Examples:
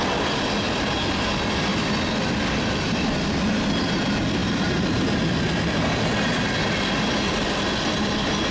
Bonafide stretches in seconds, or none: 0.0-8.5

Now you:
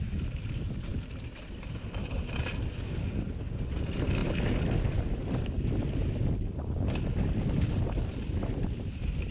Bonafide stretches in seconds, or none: 0.0-9.3

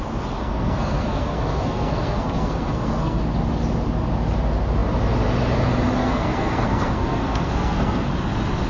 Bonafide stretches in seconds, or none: 0.0-0.4; 3.2-6.0; 8.1-8.7

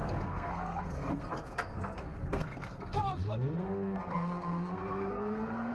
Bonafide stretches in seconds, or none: none

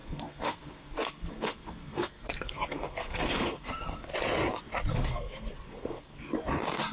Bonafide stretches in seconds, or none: 4.1-4.9; 6.2-6.9

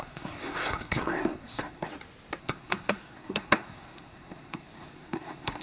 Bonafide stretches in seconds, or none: 1.9-2.4

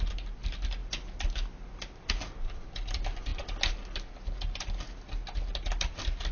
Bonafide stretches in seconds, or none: 0.0-6.3